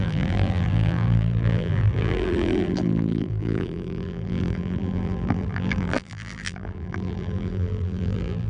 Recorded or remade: remade